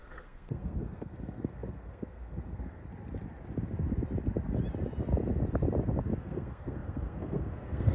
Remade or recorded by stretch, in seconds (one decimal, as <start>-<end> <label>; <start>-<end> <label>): 0.0-2.8 remade; 2.8-6.2 recorded; 6.2-7.9 remade